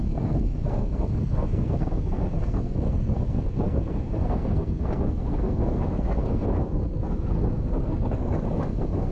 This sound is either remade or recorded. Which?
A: remade